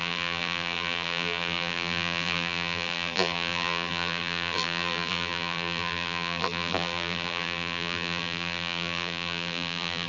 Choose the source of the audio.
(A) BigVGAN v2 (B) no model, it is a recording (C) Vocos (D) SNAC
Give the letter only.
A